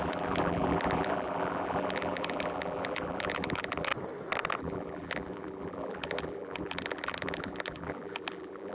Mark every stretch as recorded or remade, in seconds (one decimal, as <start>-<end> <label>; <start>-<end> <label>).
0.0-3.9 remade; 3.9-4.6 recorded; 4.6-8.7 remade